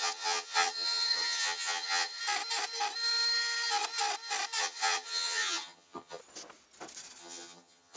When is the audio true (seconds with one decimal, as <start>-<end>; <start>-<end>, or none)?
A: 2.2-4.6; 6.2-7.2